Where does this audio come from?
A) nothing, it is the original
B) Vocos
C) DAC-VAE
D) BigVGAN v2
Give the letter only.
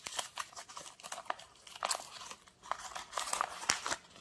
A